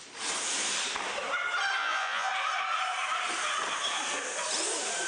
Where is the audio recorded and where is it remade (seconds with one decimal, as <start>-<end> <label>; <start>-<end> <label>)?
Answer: 0.0-1.8 recorded; 1.8-2.3 remade; 2.3-5.1 recorded